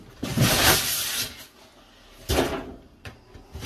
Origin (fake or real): real